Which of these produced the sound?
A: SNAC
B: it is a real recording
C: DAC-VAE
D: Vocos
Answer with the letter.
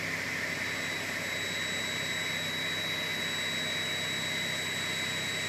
B